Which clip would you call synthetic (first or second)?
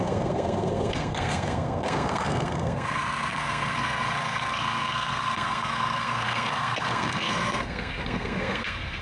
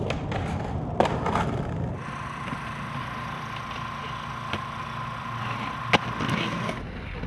first